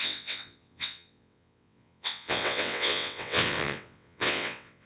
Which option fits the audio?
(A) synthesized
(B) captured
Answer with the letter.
A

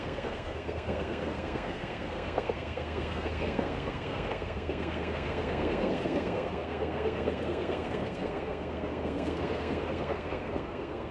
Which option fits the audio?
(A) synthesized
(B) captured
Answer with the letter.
A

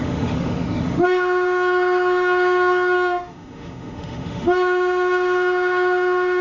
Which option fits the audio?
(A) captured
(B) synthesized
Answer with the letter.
B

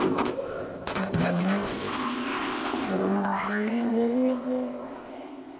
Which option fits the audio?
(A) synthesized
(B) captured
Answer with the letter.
A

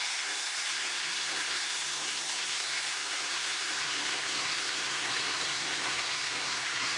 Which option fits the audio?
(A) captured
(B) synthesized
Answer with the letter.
B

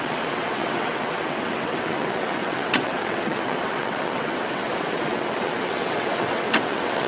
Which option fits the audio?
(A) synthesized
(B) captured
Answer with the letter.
A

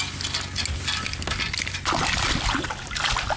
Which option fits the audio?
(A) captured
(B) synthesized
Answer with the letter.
A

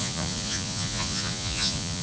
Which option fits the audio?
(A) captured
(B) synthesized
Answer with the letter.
B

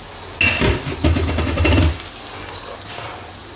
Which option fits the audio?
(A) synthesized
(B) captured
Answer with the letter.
B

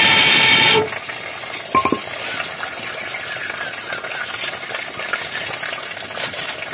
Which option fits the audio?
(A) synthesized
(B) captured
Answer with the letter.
B